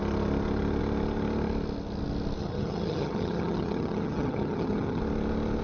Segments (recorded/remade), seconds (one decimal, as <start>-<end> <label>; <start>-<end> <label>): 0.0-2.4 recorded; 2.4-5.0 remade; 5.0-5.6 recorded